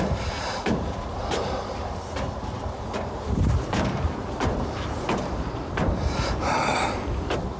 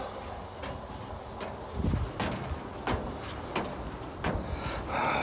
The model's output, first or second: first